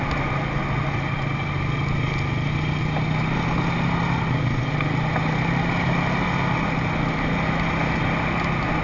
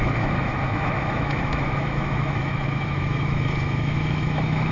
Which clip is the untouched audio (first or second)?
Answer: first